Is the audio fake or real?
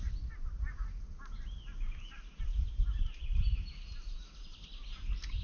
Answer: real